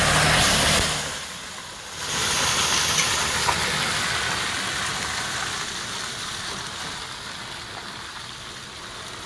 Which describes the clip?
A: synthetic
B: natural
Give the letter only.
B